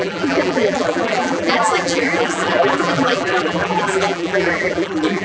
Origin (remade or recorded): remade